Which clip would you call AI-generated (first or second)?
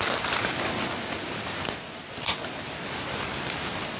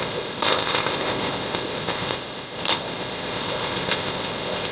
second